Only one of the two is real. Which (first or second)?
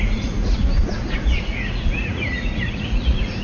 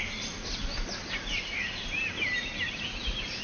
second